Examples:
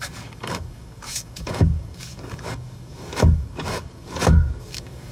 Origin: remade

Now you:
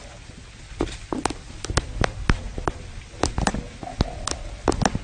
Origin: recorded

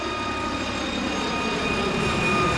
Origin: recorded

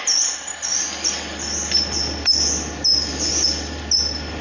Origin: recorded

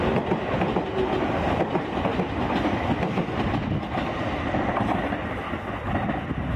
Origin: recorded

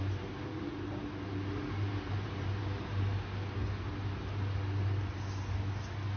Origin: recorded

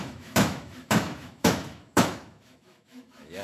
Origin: remade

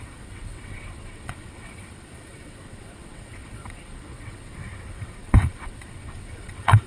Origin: remade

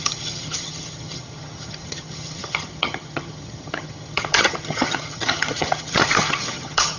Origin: remade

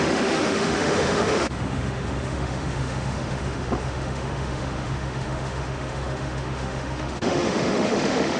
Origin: remade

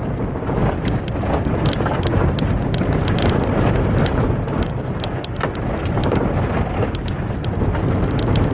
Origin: recorded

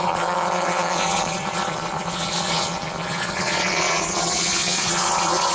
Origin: remade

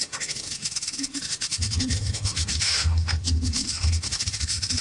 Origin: remade